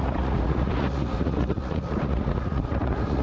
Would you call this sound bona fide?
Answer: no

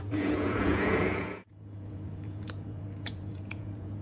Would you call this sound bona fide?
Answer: no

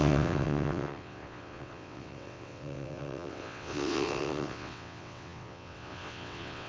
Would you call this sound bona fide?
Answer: no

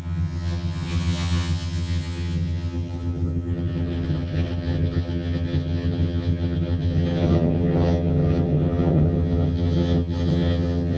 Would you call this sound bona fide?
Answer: no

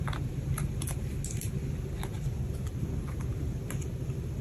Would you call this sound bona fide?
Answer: yes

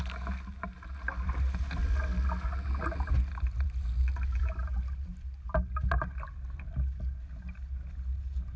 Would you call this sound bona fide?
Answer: yes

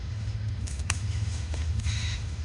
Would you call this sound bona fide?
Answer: no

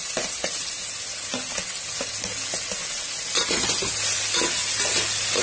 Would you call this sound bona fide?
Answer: yes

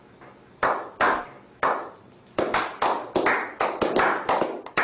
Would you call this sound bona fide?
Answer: yes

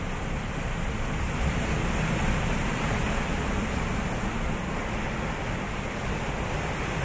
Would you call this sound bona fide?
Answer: yes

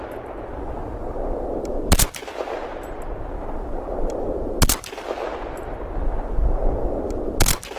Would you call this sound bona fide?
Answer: yes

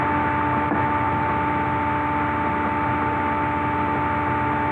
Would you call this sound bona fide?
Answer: yes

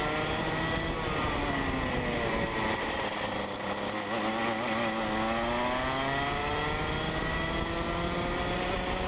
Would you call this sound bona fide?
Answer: yes